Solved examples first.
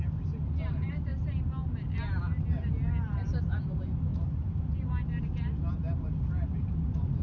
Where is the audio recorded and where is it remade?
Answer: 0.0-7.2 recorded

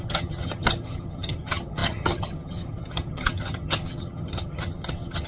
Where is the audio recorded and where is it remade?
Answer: 0.0-5.3 remade

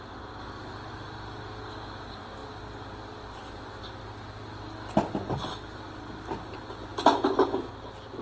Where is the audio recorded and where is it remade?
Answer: 0.0-8.2 recorded

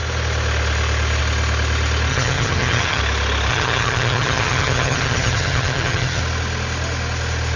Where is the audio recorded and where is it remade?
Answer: 0.0-2.1 recorded; 2.1-3.0 remade; 3.0-3.5 recorded; 3.5-6.2 remade; 6.2-7.6 recorded

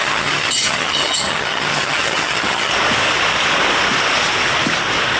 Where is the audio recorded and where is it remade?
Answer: 0.0-2.7 remade; 2.7-5.2 recorded

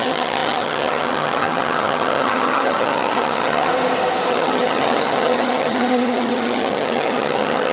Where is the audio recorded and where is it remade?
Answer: 0.0-3.7 remade; 3.7-4.3 recorded; 4.3-7.7 remade

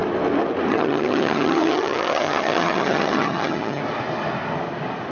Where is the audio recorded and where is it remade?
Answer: 0.0-0.7 recorded; 0.7-3.8 remade; 3.8-5.1 recorded